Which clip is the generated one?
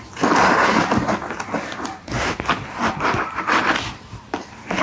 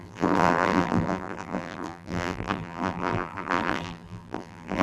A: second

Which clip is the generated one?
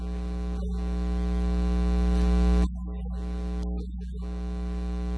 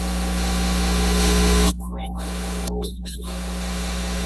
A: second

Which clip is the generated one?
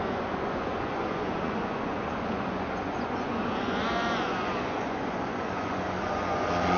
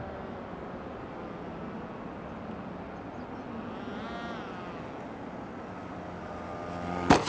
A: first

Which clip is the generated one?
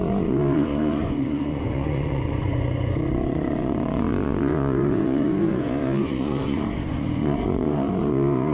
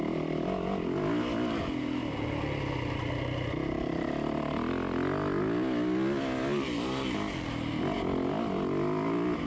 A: first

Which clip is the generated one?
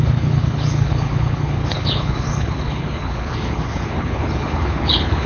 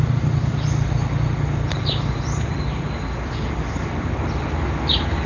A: first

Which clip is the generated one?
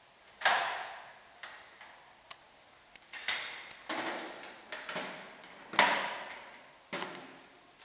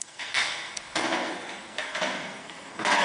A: second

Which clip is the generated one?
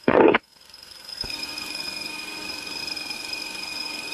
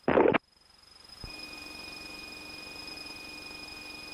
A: first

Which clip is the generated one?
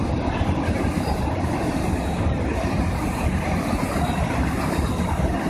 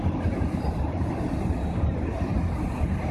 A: second